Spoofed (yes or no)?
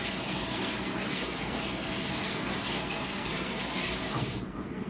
yes